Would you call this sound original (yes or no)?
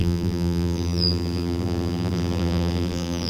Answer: no